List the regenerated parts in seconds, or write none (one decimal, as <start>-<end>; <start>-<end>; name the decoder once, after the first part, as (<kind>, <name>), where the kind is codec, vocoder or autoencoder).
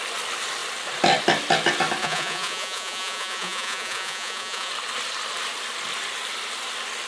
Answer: 2.0-4.7 (vocoder, Vocos)